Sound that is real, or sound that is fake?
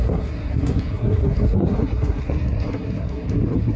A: fake